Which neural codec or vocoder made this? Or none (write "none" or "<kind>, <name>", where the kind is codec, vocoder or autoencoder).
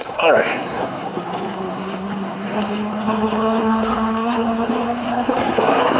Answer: codec, SNAC